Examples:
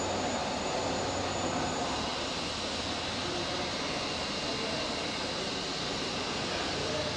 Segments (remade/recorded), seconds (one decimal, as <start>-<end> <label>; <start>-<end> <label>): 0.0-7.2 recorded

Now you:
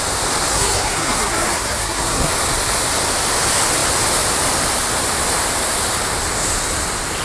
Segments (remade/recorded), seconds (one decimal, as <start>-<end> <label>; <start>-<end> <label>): 0.0-0.5 recorded; 0.5-2.3 remade; 2.3-7.2 recorded

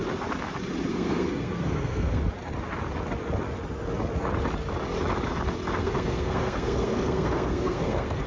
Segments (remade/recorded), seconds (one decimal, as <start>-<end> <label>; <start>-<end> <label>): 0.0-0.9 recorded; 0.9-2.2 remade; 2.2-5.8 recorded; 5.8-8.3 remade